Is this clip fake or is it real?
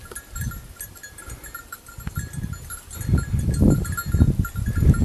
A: real